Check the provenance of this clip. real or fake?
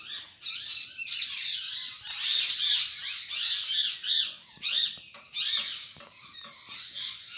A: real